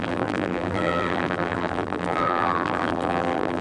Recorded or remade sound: remade